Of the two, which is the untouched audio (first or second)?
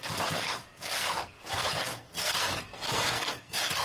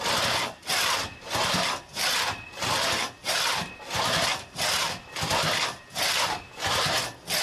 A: second